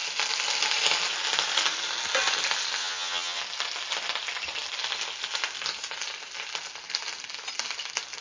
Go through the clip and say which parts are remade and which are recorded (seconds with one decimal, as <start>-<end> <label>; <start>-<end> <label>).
0.0-2.8 recorded; 2.8-3.4 remade; 3.4-8.2 recorded